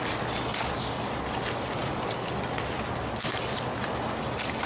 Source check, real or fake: real